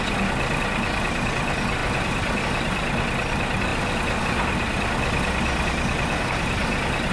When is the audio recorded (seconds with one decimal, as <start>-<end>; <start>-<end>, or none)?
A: 0.0-1.8; 2.4-7.1